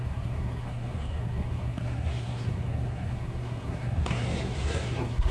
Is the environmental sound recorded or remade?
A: remade